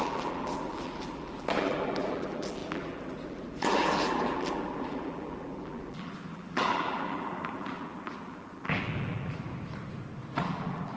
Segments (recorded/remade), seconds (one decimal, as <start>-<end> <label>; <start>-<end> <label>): 0.0-9.5 remade; 9.5-10.4 recorded; 10.4-11.0 remade